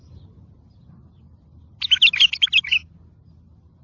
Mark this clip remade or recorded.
recorded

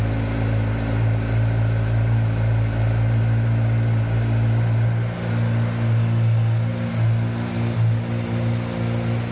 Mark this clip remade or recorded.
recorded